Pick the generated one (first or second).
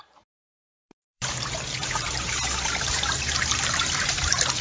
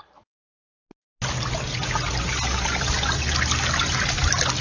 first